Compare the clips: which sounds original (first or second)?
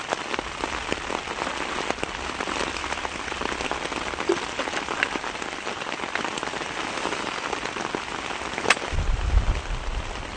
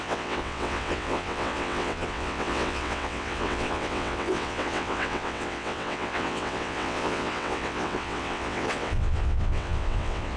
first